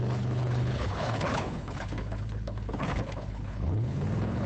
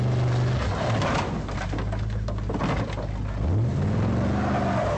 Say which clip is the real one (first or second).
second